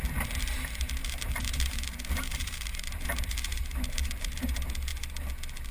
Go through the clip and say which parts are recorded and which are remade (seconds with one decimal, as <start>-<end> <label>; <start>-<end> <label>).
0.0-1.0 recorded; 1.0-4.4 remade; 4.4-5.7 recorded